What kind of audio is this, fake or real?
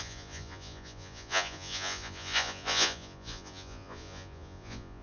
fake